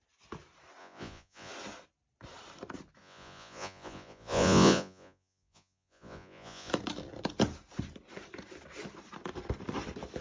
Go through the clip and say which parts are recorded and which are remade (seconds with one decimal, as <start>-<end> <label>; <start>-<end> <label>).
0.0-0.8 recorded; 0.8-1.5 remade; 1.5-3.0 recorded; 3.0-6.7 remade; 6.7-10.2 recorded